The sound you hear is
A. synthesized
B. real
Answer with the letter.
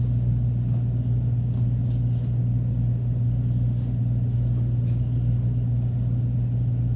B